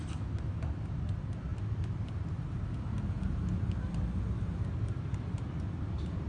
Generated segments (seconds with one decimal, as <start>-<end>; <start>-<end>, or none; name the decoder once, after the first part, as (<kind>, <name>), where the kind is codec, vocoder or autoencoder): none